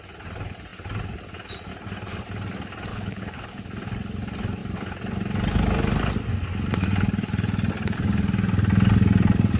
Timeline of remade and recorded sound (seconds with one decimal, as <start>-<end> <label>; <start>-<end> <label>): 0.0-2.9 recorded; 2.9-3.6 remade; 3.6-9.6 recorded